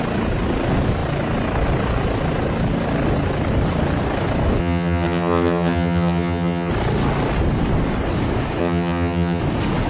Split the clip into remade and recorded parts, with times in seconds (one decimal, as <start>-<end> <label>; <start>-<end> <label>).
0.0-4.6 recorded; 4.6-6.7 remade; 6.7-8.6 recorded; 8.6-9.4 remade; 9.4-9.9 recorded